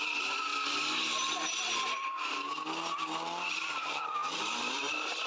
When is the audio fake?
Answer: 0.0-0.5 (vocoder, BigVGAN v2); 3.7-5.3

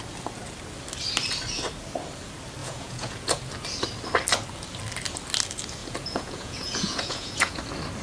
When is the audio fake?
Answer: 2.6-3.4 (vocoder, Vocos); 5.8-7.6

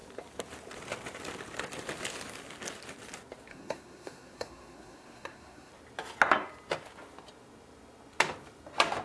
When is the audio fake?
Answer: 3.5-5.7 (codec, SNAC)

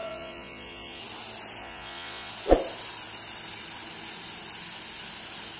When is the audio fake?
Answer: 0.0-1.0 (vocoder, Vocos); 1.6-2.3

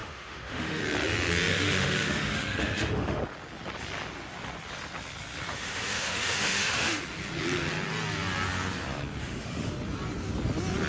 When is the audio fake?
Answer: 0.0-0.8 (autoencoder, DAC-VAE); 1.5-3.2; 5.5-7.0; 9.2-9.7

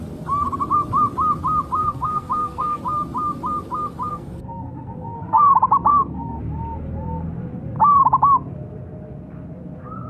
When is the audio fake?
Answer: 1.8-2.8 (codec, SNAC); 4.1-5.4; 5.9-6.4

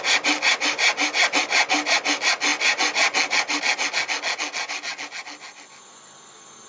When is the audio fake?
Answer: none